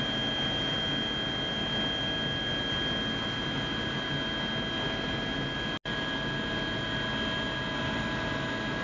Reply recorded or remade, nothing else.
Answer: recorded